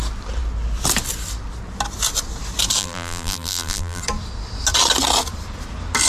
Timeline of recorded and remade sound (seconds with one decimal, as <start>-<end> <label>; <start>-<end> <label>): 0.0-2.8 recorded; 2.8-4.0 remade; 4.0-6.1 recorded

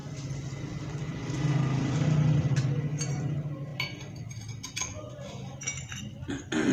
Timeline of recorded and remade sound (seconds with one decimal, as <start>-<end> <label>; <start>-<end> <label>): 0.0-6.7 recorded

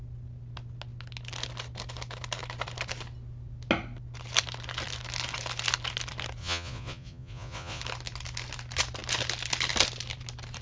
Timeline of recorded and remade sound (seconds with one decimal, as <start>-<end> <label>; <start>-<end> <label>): 0.0-6.4 recorded; 6.4-7.8 remade; 7.8-10.6 recorded